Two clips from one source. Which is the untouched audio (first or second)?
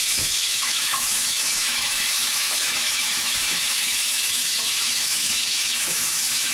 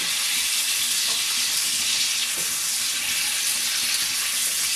second